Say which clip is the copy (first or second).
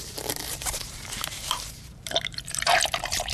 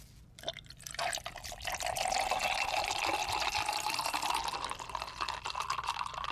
first